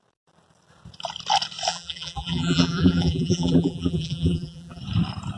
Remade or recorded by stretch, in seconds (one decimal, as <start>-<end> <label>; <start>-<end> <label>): 0.0-1.7 recorded; 1.7-4.8 remade; 4.8-5.4 recorded